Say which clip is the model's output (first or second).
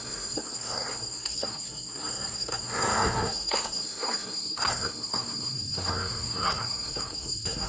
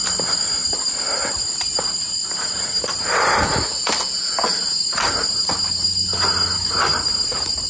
first